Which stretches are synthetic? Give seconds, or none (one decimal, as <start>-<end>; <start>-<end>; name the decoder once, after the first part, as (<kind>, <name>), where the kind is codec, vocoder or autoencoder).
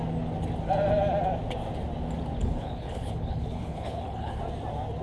2.4-4.4 (codec, HILCodec)